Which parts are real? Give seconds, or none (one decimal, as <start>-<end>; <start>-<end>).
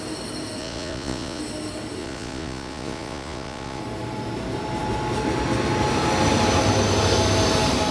0.0-0.6; 1.4-2.0; 3.8-7.9